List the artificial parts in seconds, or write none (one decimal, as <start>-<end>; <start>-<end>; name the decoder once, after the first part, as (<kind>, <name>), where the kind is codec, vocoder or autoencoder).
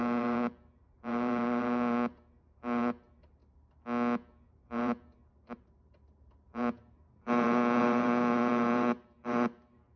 0.0-3.4 (vocoder, BigVGAN v2); 4.5-10.0